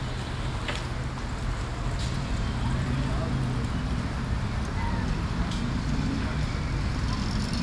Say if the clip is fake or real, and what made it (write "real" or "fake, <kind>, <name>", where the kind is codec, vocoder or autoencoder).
real